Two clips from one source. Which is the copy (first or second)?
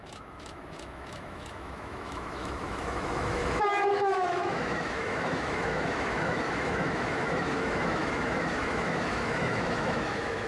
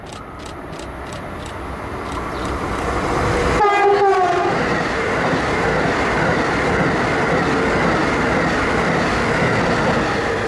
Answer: first